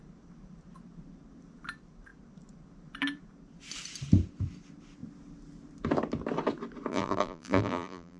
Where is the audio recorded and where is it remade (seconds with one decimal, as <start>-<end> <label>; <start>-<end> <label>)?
0.0-6.9 recorded; 6.9-8.2 remade